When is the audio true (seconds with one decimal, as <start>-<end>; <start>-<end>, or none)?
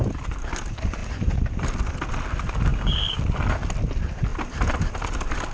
0.0-2.7; 3.2-5.5